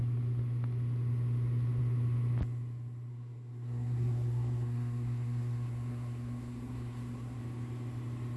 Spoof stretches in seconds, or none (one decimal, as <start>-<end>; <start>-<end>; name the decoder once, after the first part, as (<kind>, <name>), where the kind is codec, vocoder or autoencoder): 3.1-7.4 (codec, SNAC)